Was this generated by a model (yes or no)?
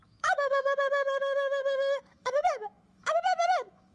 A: yes